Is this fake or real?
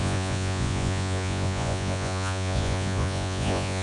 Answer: fake